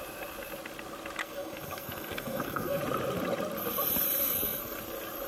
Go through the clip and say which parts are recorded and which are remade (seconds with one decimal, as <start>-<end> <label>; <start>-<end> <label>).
0.0-1.2 recorded; 1.2-2.8 remade; 2.8-4.2 recorded; 4.2-4.8 remade; 4.8-5.3 recorded